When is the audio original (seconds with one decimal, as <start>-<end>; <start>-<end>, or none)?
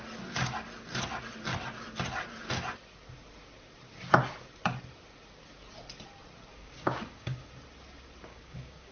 0.0-6.5; 7.5-8.3